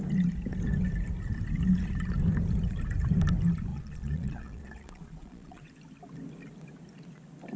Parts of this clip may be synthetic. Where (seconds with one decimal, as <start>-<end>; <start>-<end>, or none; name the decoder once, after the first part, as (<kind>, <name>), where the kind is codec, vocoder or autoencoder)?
3.7-5.7 (vocoder, Vocos)